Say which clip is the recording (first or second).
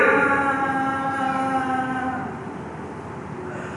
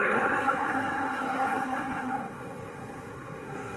first